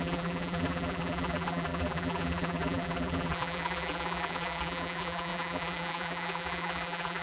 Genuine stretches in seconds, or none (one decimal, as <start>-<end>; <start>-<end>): none